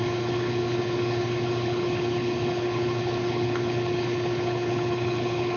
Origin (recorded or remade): remade